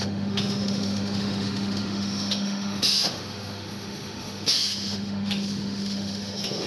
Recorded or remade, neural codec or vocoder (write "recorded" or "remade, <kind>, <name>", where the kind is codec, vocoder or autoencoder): remade, autoencoder, DAC-VAE